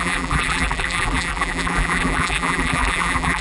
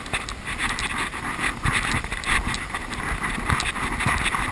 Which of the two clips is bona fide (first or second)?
second